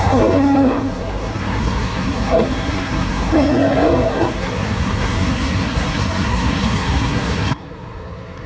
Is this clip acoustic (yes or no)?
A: no